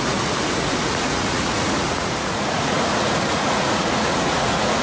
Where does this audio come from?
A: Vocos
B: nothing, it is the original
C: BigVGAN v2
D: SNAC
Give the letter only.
A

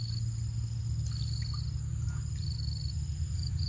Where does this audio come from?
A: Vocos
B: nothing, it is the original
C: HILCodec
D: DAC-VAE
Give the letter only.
B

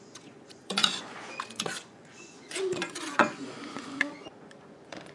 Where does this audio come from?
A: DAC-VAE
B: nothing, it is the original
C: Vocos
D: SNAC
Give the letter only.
C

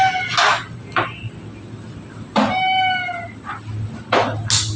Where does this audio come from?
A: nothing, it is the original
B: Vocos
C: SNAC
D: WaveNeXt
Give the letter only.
A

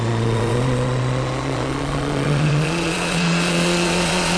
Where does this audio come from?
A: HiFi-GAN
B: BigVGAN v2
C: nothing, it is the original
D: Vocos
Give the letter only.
D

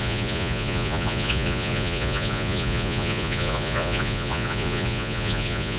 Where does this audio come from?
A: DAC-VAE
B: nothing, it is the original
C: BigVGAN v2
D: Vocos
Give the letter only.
D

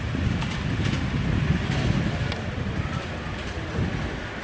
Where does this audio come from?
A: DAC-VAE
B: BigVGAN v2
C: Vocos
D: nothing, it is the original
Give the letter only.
D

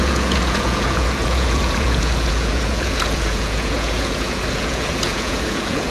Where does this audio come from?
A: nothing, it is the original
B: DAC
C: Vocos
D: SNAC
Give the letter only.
C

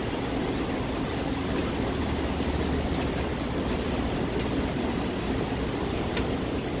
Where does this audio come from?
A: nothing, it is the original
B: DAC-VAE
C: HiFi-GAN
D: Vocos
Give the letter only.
A